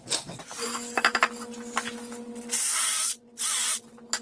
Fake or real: real